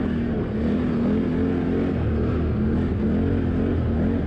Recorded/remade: recorded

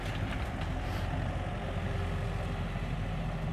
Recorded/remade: recorded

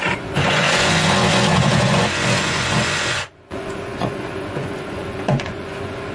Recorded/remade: remade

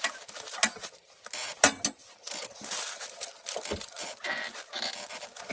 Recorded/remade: recorded